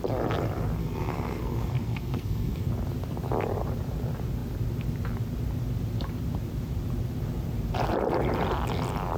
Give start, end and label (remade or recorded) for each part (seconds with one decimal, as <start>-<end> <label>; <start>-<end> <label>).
0.0-0.8 recorded; 0.8-2.7 remade; 2.7-9.2 recorded